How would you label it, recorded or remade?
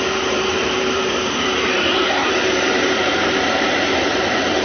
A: remade